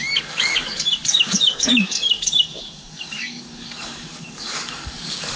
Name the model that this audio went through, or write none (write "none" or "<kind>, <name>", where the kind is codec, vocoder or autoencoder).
codec, DAC